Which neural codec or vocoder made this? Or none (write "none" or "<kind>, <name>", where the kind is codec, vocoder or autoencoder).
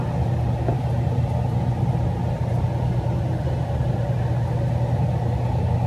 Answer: none